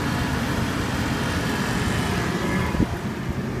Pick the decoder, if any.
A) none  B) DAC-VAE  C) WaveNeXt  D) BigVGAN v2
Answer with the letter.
A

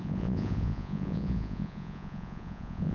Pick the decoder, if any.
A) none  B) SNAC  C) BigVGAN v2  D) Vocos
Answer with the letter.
D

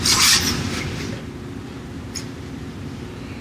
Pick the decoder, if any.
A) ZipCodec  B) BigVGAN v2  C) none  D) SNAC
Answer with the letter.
C